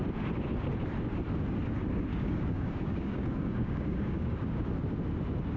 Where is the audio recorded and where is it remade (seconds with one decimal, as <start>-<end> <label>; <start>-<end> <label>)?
0.0-2.1 recorded; 2.1-4.7 remade; 4.7-5.6 recorded